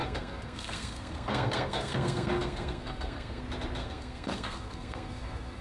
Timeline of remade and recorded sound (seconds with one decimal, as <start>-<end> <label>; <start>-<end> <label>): 0.0-3.4 remade; 3.4-3.8 recorded; 3.8-5.6 remade